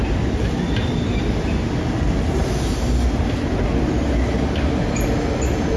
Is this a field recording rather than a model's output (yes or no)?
yes